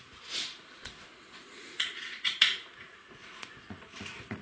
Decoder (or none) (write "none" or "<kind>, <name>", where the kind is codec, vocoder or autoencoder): vocoder, Vocos